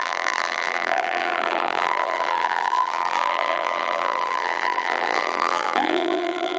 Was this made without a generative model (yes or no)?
no